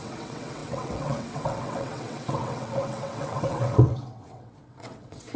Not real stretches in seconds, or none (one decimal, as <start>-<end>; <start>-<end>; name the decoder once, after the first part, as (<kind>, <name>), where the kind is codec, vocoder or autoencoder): 0.0-5.4 (vocoder, WaveNeXt)